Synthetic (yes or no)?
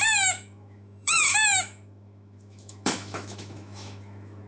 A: yes